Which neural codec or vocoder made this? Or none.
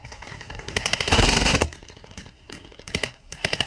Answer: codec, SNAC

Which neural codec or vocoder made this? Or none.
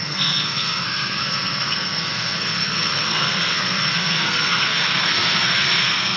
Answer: codec, SNAC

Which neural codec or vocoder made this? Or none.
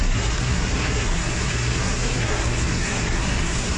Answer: codec, SNAC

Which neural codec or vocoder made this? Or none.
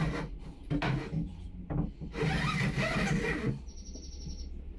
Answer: none